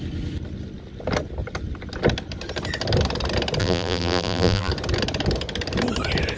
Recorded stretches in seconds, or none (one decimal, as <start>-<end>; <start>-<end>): 0.0-3.6; 4.7-6.4